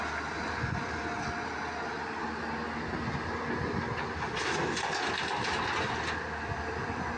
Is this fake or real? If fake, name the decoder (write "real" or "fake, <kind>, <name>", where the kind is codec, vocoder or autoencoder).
real